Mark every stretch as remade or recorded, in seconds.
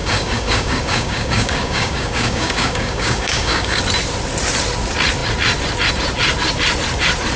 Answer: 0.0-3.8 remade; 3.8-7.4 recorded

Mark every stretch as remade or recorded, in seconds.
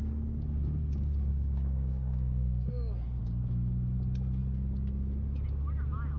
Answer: 0.0-1.3 recorded; 1.3-3.2 remade; 3.2-6.2 recorded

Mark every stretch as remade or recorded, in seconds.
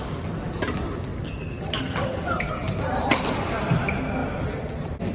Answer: 0.0-2.0 recorded; 2.0-2.5 remade; 2.5-5.1 recorded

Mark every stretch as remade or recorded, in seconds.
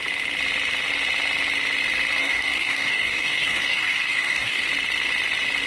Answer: 0.0-2.2 recorded; 2.2-4.6 remade; 4.6-5.7 recorded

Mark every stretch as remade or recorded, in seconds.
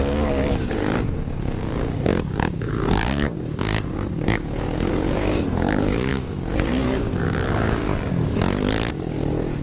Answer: 0.0-7.9 remade; 7.9-8.9 recorded; 8.9-9.6 remade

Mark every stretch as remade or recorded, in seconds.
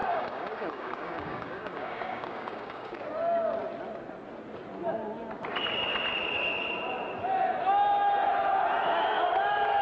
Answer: 0.0-3.0 remade; 3.0-9.8 recorded